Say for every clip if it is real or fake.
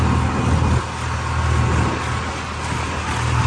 real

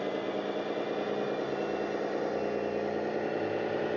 real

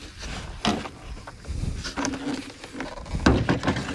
real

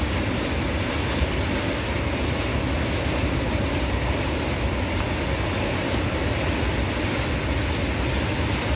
real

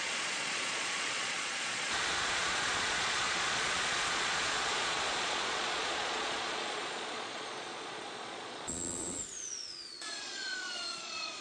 fake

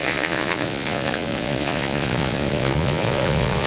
fake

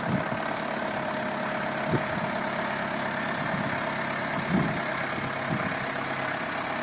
real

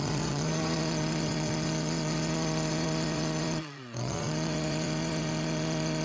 fake